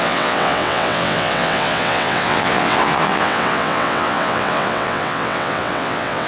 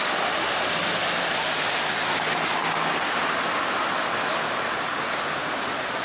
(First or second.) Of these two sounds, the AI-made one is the first